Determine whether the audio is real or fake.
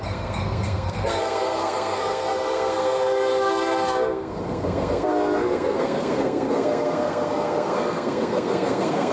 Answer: fake